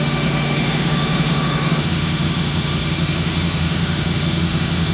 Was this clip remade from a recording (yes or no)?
yes